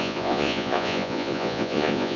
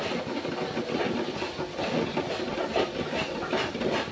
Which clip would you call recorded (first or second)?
second